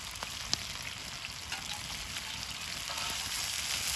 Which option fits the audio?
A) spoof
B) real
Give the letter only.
B